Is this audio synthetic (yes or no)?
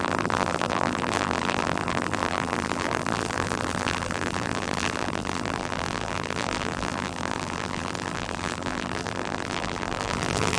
yes